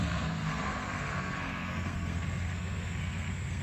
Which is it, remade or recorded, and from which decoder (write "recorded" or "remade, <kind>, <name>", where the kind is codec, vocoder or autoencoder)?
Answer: remade, codec, SNAC